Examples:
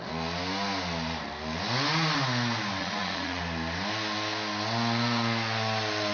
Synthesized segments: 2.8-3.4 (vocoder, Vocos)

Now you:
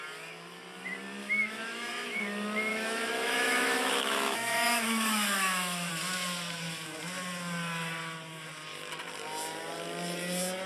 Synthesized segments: 1.2-2.2 (autoencoder, DAC-VAE); 2.7-5.9

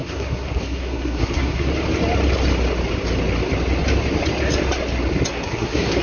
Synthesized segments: 0.0-1.7 (codec, SNAC); 5.3-6.0

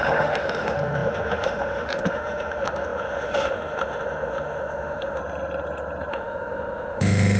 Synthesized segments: 0.0-5.2 (autoencoder, DAC-VAE); 6.1-7.4